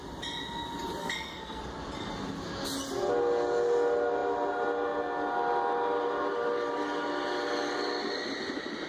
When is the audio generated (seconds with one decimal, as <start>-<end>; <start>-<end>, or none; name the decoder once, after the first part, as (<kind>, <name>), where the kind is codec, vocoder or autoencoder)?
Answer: 1.0-1.6 (codec, SNAC)

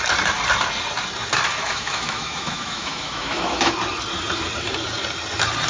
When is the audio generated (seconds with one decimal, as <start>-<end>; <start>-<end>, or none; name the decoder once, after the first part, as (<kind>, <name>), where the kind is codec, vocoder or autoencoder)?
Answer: 1.5-3.7 (autoencoder, DAC-VAE)

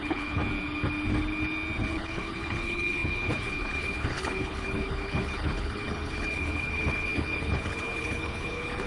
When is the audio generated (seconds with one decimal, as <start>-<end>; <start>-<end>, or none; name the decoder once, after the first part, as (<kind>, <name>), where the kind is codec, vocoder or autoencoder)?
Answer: 0.0-0.4 (codec, HILCodec); 1.9-8.9

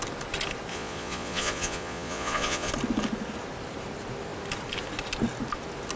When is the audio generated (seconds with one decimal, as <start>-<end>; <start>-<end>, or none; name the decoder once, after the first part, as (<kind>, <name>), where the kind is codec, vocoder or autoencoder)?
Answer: 0.7-2.7 (vocoder, Vocos)

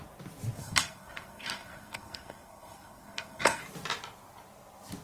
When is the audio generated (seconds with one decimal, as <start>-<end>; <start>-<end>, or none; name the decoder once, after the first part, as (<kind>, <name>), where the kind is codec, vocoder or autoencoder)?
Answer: 0.6-3.6 (codec, SNAC)

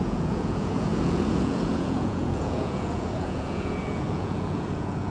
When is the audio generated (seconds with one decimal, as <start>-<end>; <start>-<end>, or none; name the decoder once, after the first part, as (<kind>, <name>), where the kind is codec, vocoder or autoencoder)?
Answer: 0.0-5.1 (vocoder, Vocos)